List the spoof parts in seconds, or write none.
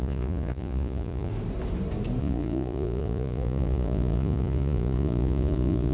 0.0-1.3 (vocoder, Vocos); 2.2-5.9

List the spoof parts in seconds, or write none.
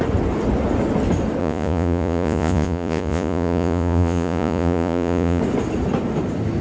1.4-5.4 (vocoder, Vocos)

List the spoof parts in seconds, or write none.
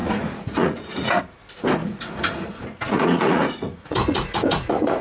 0.0-1.2 (vocoder, Vocos); 1.8-5.0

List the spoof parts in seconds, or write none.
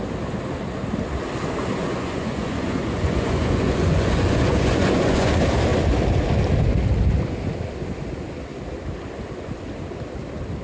1.8-5.3 (vocoder, Vocos)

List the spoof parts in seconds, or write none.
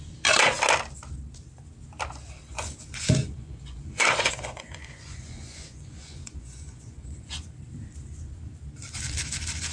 2.5-7.5 (vocoder, Vocos)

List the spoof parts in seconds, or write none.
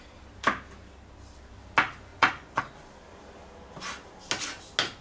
2.1-2.6 (vocoder, Vocos)